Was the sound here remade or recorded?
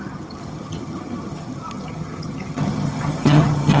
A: remade